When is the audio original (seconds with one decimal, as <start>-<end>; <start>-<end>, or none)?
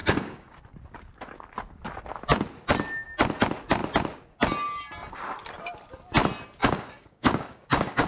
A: 0.5-6.6